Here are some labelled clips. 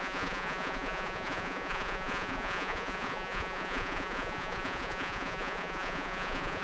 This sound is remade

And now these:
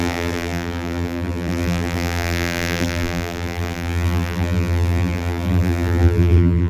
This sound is remade